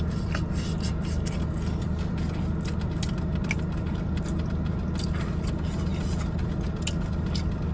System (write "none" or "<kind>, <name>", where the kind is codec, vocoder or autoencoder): none